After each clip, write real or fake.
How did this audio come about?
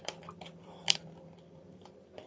fake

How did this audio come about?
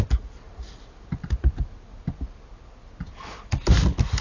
real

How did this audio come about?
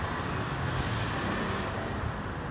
real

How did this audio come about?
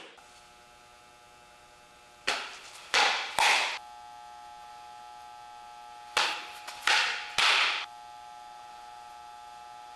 real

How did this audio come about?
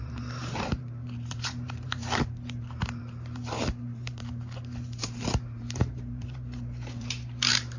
fake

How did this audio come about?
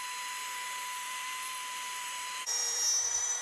fake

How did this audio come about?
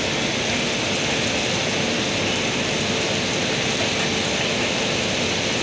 real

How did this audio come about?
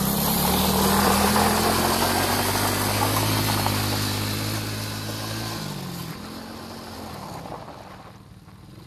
real